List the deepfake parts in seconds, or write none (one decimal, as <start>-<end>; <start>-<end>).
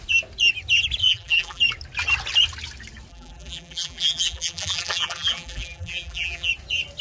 1.0-1.6; 3.1-6.5